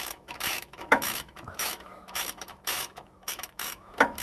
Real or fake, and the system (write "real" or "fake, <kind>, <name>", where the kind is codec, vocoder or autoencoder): fake, autoencoder, DAC-VAE